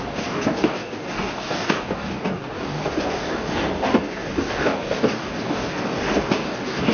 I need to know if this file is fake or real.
fake